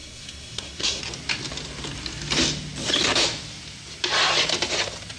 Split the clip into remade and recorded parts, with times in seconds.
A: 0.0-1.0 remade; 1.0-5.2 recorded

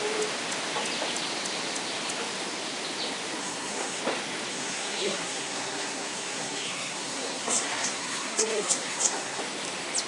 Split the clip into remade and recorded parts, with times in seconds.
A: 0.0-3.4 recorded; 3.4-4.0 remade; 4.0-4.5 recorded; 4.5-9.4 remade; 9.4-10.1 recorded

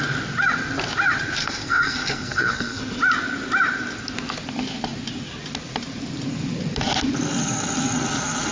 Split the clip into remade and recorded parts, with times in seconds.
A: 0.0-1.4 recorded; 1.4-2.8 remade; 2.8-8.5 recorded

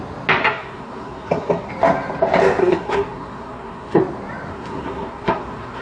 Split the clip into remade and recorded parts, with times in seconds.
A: 0.0-0.4 recorded; 0.4-1.7 remade; 1.7-2.6 recorded; 2.6-4.0 remade; 4.0-4.5 recorded; 4.5-5.8 remade

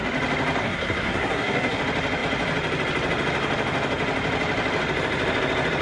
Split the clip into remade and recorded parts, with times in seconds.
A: 0.0-0.6 recorded; 0.6-1.8 remade; 1.8-5.8 recorded

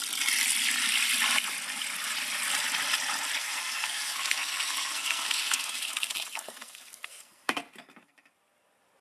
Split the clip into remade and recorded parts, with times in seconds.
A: 0.0-3.4 recorded; 3.4-8.3 remade; 8.3-9.0 recorded

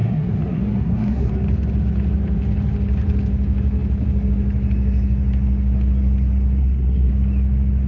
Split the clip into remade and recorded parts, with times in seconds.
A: 0.0-1.3 remade; 1.3-6.6 recorded; 6.6-7.1 remade; 7.1-7.9 recorded

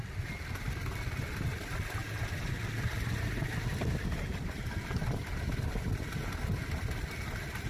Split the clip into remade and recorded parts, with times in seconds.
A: 0.0-7.7 recorded